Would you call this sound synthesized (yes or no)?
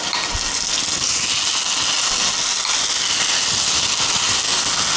no